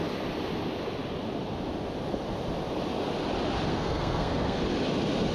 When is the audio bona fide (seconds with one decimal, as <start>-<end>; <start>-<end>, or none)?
0.0-3.7; 4.6-5.3